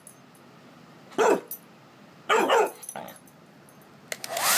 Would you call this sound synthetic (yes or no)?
no